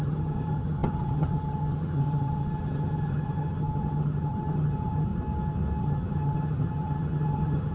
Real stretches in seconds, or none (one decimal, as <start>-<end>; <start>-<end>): 5.1-5.8